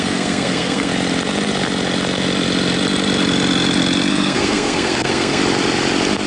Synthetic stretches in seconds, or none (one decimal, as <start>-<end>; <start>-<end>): 0.0-0.9; 4.1-5.4